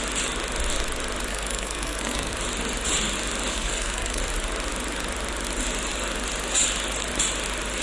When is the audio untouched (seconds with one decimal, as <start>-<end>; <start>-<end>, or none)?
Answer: 0.0-1.3; 2.3-3.5; 4.2-7.8